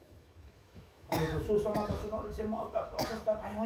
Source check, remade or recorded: remade